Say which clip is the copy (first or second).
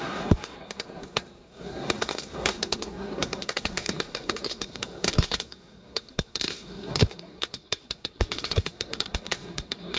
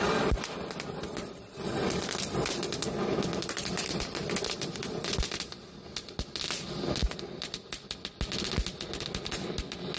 first